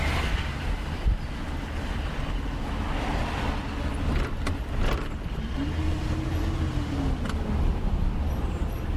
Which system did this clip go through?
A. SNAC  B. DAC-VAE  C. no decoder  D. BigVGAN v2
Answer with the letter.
C